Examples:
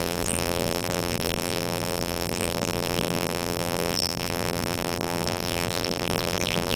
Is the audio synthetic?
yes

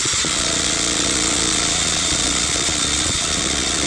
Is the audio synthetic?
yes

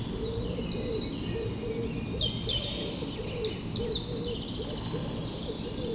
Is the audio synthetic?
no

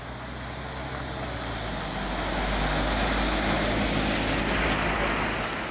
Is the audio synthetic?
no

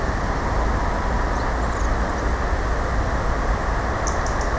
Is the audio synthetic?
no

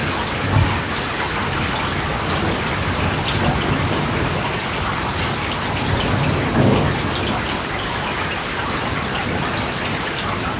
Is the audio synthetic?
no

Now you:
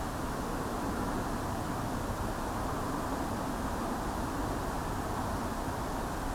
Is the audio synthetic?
no